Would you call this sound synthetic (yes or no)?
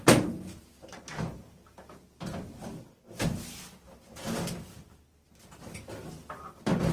no